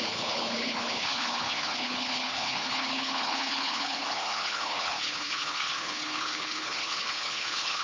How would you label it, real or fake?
fake